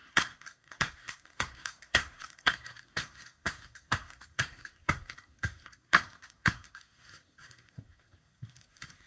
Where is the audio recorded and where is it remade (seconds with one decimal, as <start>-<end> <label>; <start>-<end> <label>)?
0.0-9.1 remade